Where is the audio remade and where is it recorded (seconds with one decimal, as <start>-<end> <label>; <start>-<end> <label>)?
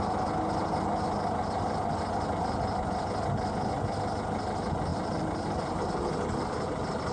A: 0.0-4.9 recorded; 4.9-5.8 remade; 5.8-7.1 recorded